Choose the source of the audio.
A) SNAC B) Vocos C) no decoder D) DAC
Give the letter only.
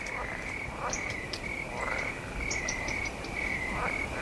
C